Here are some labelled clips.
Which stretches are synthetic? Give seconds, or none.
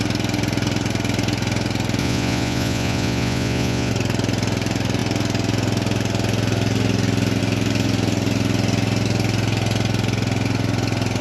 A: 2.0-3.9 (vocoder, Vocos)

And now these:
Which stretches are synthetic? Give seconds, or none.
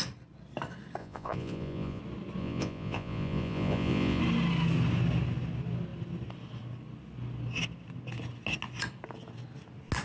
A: 1.0-2.0 (vocoder, Vocos); 2.4-4.2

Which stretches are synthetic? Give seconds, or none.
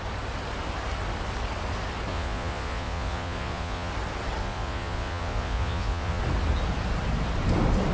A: 2.1-3.9 (vocoder, Vocos); 4.4-6.2